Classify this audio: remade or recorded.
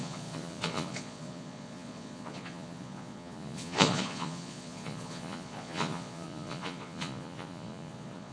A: remade